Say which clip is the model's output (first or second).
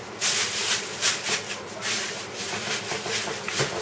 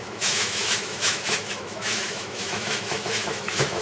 second